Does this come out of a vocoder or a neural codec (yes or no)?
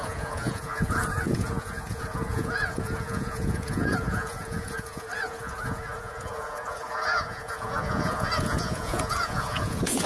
yes